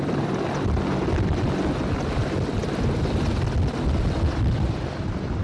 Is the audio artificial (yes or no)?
no